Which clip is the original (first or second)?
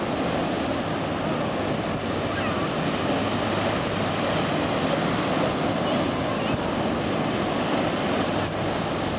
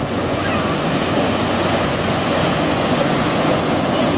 first